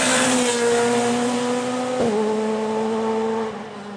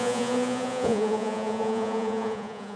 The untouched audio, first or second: first